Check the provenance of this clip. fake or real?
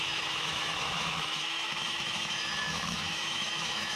fake